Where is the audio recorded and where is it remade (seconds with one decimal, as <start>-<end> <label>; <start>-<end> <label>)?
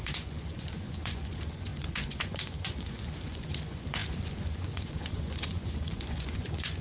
0.0-6.8 remade